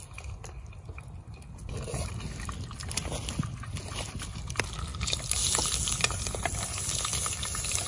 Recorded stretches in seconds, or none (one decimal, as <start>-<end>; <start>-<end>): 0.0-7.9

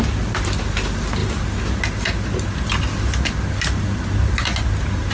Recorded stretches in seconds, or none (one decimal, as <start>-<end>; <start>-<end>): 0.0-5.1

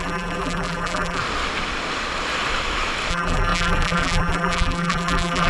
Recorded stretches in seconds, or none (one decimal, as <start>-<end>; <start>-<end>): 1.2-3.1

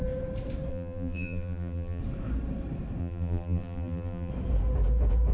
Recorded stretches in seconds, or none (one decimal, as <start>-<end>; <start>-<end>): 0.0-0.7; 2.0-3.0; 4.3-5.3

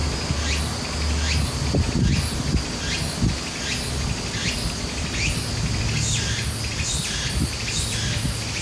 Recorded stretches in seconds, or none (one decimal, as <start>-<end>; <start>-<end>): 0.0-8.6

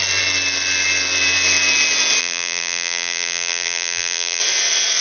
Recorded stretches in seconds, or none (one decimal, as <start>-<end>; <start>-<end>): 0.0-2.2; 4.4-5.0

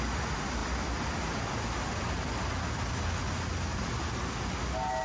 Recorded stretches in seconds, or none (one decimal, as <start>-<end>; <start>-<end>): 0.0-5.0

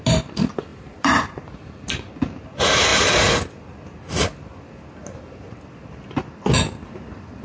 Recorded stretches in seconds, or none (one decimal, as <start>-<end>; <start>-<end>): 0.0-0.7; 2.1-7.4